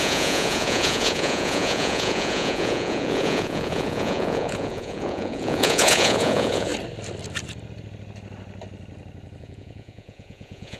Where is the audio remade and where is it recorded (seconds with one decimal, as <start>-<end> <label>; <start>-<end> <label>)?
0.0-6.7 remade; 6.7-9.4 recorded; 9.4-10.8 remade